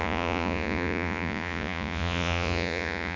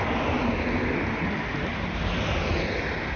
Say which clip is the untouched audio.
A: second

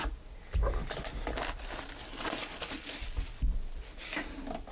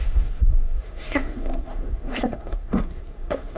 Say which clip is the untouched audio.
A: first